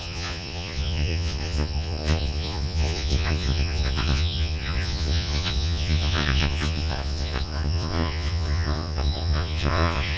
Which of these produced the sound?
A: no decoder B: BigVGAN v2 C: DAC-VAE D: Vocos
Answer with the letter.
D